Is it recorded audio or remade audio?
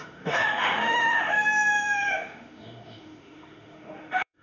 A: remade